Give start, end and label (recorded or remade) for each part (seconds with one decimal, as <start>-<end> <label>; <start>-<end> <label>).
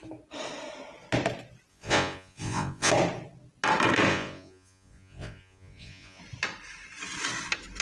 0.0-1.7 recorded; 1.7-2.9 remade; 2.9-4.1 recorded; 4.1-6.2 remade; 6.2-7.8 recorded